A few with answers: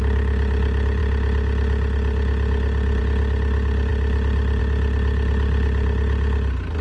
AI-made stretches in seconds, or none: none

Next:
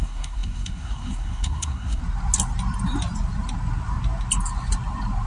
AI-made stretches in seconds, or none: 0.0-2.0

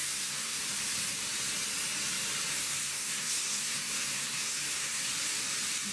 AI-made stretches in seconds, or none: 0.0-0.6; 2.5-5.0

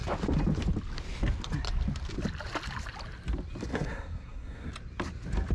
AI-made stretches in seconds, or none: 3.7-4.7

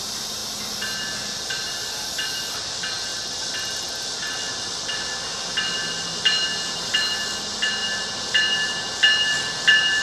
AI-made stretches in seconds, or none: none

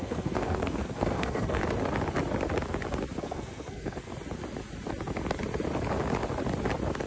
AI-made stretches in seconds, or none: 0.0-1.6; 3.2-4.1